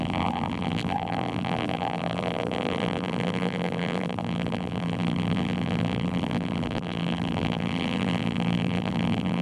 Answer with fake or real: fake